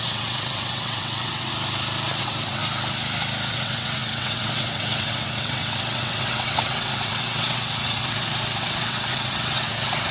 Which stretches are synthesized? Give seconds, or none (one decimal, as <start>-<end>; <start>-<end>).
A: 0.0-1.5; 2.2-2.6; 3.5-10.1